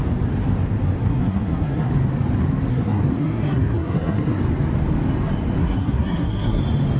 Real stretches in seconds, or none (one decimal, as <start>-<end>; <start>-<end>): 0.0-1.0; 1.9-2.7; 4.4-5.6; 6.6-7.0